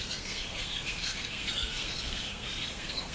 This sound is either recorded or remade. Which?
remade